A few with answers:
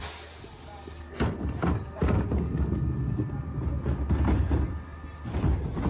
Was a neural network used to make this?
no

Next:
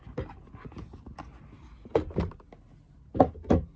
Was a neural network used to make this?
no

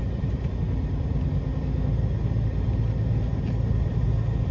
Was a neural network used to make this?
yes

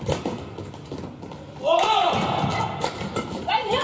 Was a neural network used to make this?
no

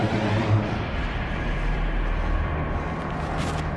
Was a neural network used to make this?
yes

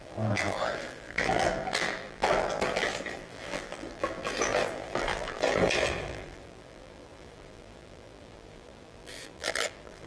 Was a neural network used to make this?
yes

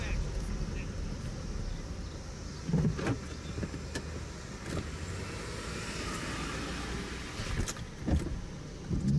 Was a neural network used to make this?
no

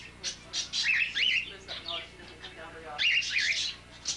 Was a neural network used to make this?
no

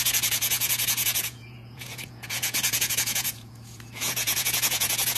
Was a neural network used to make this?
yes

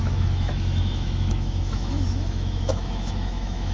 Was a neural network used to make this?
yes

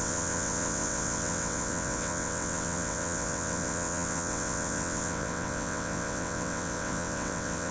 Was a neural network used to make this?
yes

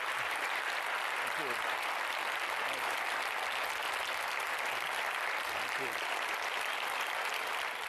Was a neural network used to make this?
no